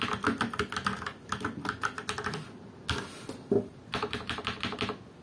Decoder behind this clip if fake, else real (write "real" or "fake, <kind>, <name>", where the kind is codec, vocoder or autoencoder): real